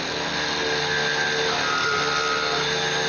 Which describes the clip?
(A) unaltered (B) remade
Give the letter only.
A